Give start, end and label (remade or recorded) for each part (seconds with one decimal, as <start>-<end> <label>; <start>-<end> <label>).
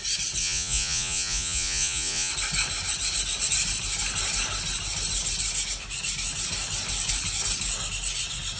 0.0-0.4 recorded; 0.4-2.3 remade; 2.3-8.6 recorded